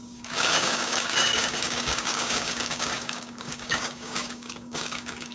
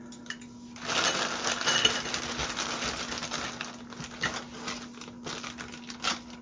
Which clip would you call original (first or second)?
second